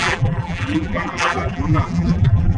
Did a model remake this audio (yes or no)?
yes